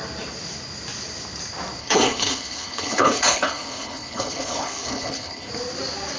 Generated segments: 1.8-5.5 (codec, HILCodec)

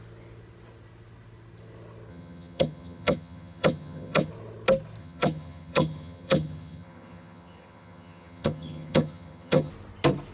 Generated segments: 2.1-4.3 (vocoder, HiFi-GAN); 5.0-9.7

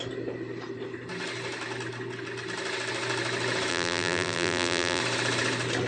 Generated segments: 3.7-5.0 (vocoder, BigVGAN v2)